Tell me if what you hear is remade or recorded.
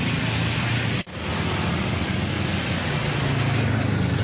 recorded